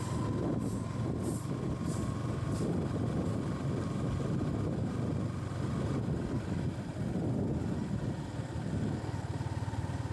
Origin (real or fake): real